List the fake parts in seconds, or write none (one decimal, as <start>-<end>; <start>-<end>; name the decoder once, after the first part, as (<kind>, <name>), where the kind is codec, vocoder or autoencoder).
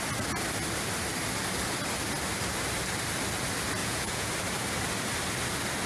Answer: 3.8-4.3 (vocoder, Vocos)